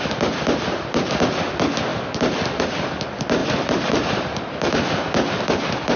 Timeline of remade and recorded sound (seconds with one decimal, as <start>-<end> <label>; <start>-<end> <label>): 0.0-1.9 recorded; 1.9-2.6 remade; 2.6-3.4 recorded; 3.4-4.7 remade; 4.7-6.0 recorded